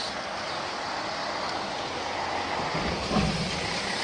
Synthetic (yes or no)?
no